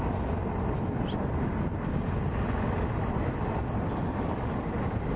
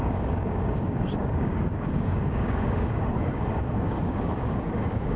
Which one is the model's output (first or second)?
second